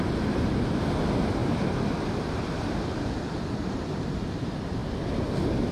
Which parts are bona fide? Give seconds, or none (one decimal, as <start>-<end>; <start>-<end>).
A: 0.0-5.7